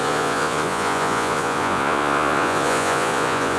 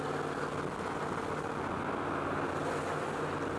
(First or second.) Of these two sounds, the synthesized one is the first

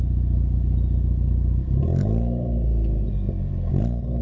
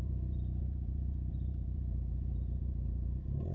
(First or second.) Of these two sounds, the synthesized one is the second